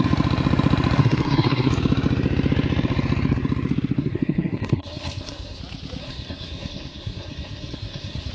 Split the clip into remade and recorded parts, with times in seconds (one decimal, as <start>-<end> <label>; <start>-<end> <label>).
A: 0.0-1.0 recorded; 1.0-1.7 remade; 1.7-4.0 recorded; 4.0-5.6 remade; 5.6-6.0 recorded; 6.0-8.3 remade